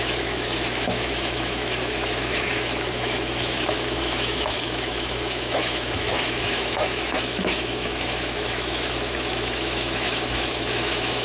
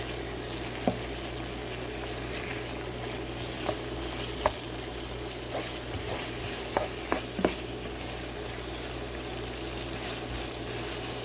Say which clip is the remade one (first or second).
first